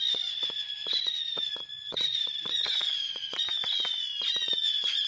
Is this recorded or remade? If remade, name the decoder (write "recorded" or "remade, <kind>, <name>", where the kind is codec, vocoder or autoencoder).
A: remade, vocoder, Vocos